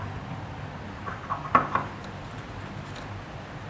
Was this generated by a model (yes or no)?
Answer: no